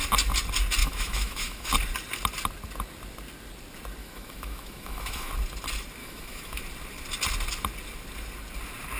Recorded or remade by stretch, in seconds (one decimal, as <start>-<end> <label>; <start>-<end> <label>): 0.0-0.8 recorded; 0.8-1.7 remade; 1.7-4.0 recorded; 4.0-5.3 remade; 5.3-6.0 recorded; 6.0-6.6 remade; 6.6-9.0 recorded